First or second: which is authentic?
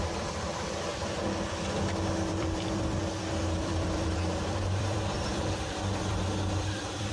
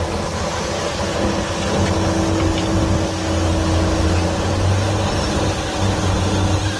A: second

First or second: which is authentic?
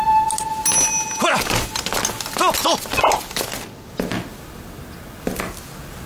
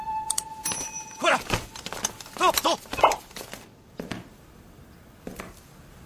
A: first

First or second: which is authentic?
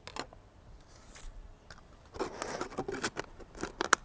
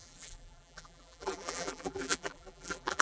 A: first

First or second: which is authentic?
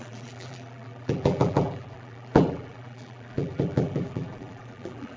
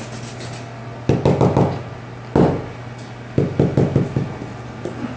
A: second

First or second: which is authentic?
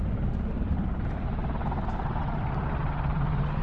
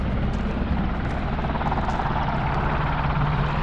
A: second